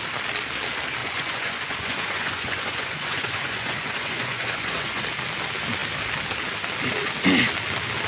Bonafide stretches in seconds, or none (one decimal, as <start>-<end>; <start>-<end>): 0.0-1.0; 5.0-8.1